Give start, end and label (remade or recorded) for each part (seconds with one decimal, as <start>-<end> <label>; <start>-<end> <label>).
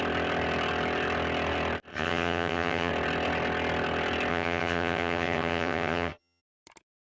0.0-1.9 recorded; 1.9-2.9 remade; 2.9-4.3 recorded; 4.3-6.4 remade; 6.4-7.2 recorded